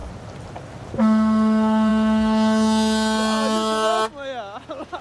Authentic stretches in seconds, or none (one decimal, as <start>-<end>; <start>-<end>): 0.0-5.0